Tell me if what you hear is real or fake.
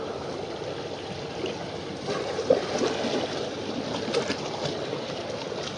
real